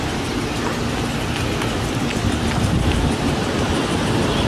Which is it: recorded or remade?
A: remade